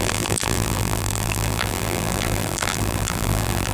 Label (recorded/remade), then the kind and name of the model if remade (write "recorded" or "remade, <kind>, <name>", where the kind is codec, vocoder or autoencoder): remade, vocoder, BigVGAN v2